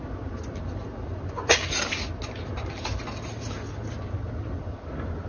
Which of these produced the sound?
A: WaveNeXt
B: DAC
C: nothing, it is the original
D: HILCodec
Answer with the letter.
C